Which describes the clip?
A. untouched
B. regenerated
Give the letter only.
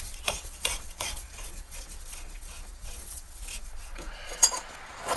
B